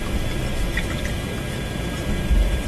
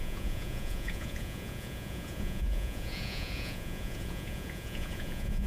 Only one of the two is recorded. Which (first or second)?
first